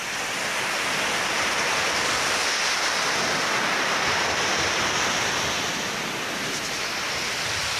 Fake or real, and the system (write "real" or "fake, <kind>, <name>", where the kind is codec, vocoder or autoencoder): real